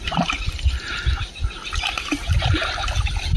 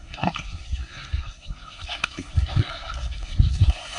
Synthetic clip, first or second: second